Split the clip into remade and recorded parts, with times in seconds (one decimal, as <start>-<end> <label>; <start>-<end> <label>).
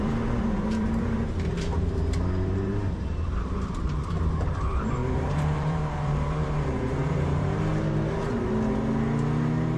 0.0-7.7 remade; 7.7-9.8 recorded